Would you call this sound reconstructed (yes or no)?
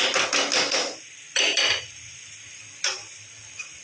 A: no